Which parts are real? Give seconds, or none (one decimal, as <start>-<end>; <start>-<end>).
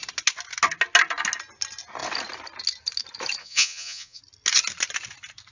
0.0-3.4; 4.2-5.5